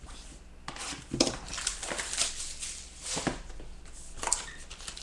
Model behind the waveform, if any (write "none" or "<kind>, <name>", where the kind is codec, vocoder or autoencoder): none